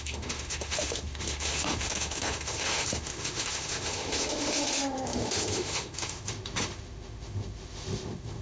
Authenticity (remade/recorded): remade